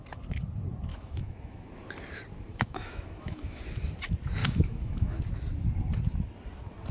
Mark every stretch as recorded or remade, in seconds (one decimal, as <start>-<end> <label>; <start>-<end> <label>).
0.0-0.9 recorded; 0.9-1.7 remade; 1.7-2.5 recorded; 2.5-3.6 remade; 3.6-4.4 recorded; 4.4-5.2 remade; 5.2-6.9 recorded